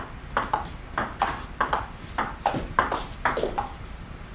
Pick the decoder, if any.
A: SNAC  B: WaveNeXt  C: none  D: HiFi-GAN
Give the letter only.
C